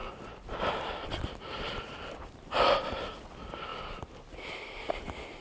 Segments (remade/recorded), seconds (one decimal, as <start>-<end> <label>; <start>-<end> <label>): 0.0-3.2 remade; 3.2-3.7 recorded; 3.7-5.0 remade; 5.0-5.4 recorded